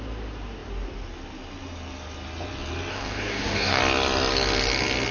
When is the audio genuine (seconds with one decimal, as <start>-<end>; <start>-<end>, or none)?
0.0-2.9; 3.8-5.1